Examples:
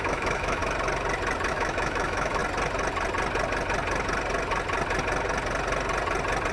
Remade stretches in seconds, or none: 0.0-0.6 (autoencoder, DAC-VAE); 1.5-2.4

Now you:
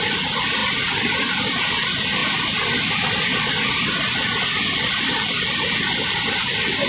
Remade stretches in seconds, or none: none

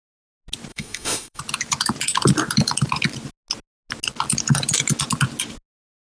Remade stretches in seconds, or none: 0.7-1.4 (autoencoder, DAC-VAE)

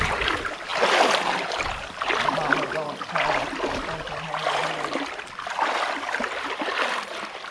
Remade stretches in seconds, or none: none

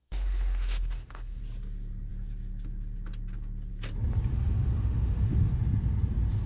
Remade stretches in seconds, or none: 0.0-1.4 (autoencoder, DAC-VAE); 4.3-5.6

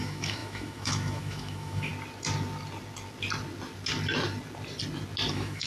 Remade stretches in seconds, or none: 0.0-1.9 (autoencoder, DAC-VAE); 5.3-5.7

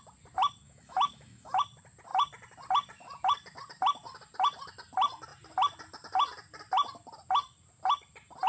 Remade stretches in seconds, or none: 0.6-1.6 (autoencoder, DAC-VAE)

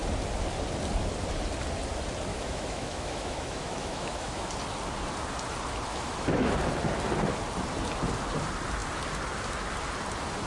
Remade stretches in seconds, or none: 2.3-4.5 (autoencoder, DAC-VAE); 5.9-6.5